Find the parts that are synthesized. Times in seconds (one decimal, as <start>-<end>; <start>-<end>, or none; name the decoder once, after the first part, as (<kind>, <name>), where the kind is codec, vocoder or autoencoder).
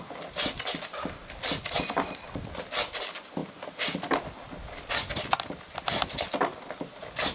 none